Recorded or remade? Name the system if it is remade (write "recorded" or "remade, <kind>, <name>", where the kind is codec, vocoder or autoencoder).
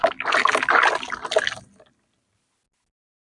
recorded